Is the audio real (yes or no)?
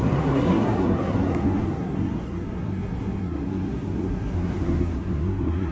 no